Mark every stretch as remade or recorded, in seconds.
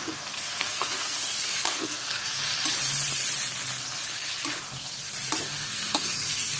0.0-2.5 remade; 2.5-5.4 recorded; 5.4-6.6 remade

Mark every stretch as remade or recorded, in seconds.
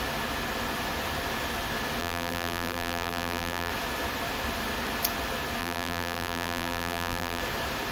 0.0-2.0 recorded; 2.0-3.7 remade; 3.7-5.6 recorded; 5.6-7.4 remade; 7.4-7.9 recorded